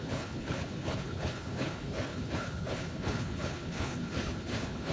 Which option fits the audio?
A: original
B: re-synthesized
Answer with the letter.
B